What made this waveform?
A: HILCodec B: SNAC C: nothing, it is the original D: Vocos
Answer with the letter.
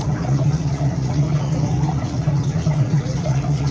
D